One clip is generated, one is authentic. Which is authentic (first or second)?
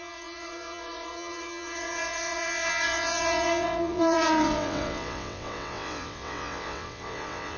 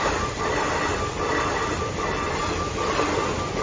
second